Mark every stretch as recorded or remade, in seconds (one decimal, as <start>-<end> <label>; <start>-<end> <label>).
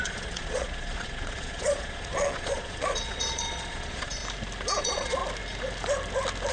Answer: 0.0-4.2 remade; 4.2-4.8 recorded; 4.8-5.2 remade; 5.2-6.5 recorded